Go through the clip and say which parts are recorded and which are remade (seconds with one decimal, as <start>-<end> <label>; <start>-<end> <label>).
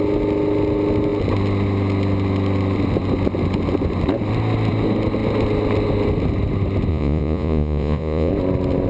0.0-6.9 recorded; 6.9-8.3 remade; 8.3-8.9 recorded